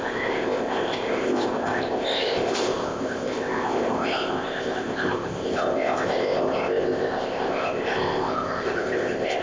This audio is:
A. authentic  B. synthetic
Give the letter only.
B